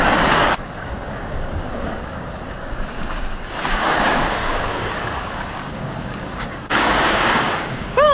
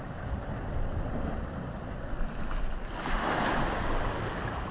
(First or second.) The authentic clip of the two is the second